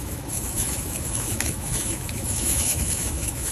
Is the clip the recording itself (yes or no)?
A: no